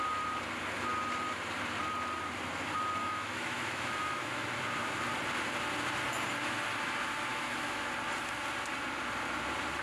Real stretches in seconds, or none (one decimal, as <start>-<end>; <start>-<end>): 0.0-3.0; 4.5-7.3; 7.9-9.8